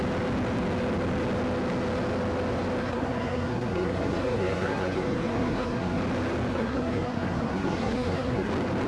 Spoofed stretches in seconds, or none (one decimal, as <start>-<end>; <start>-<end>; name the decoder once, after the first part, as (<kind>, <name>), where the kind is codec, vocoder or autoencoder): 2.8-6.0 (codec, SNAC); 6.5-8.5